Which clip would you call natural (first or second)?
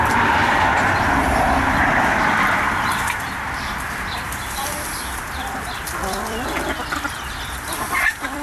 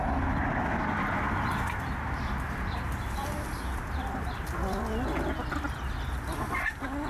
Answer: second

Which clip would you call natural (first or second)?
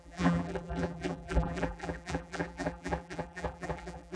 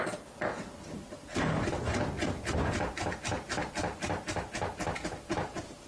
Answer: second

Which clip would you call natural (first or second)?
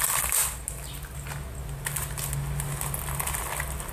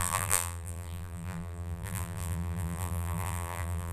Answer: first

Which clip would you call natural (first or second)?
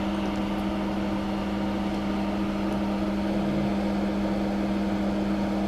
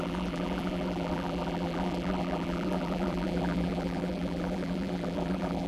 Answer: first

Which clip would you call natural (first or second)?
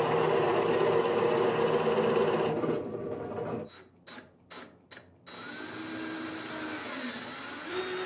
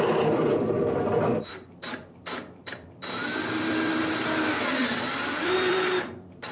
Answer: first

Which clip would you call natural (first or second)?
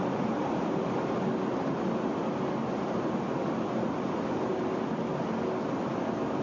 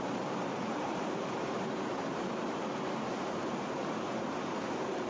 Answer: first